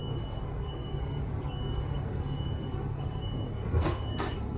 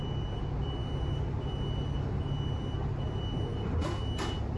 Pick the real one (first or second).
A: second